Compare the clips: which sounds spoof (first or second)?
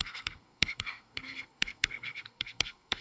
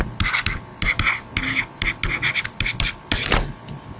first